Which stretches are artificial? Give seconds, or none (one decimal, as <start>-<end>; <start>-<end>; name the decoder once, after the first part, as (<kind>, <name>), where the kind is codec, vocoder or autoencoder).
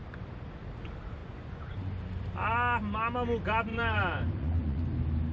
1.2-2.0 (vocoder, Vocos); 3.7-4.8